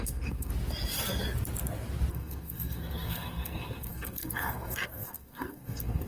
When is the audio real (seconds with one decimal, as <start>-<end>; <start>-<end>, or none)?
0.5-2.1